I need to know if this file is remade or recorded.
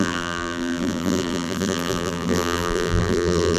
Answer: remade